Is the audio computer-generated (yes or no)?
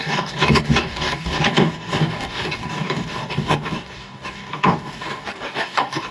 yes